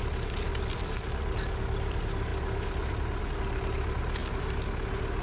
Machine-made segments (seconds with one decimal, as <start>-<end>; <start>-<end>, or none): 0.5-2.3; 3.2-4.2